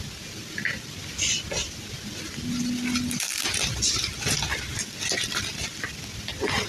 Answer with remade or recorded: recorded